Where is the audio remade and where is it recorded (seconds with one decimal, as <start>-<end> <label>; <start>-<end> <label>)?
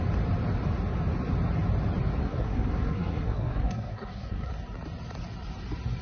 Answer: 0.0-2.2 recorded; 2.2-4.5 remade; 4.5-6.0 recorded